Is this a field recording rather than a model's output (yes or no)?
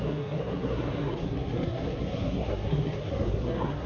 no